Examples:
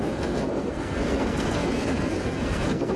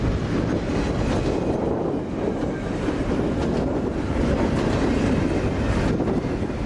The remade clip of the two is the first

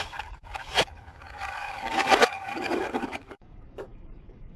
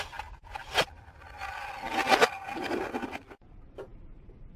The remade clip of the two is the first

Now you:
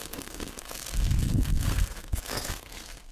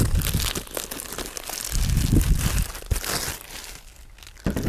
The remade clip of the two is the first